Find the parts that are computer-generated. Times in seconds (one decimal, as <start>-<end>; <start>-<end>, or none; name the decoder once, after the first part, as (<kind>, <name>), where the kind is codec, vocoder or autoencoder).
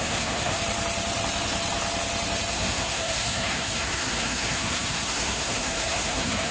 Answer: 0.0-0.6 (codec, SNAC); 2.5-6.5